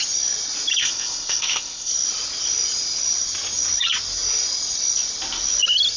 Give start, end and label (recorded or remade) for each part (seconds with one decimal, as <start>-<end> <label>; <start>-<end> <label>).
0.0-0.8 recorded; 0.8-1.9 remade; 1.9-6.0 recorded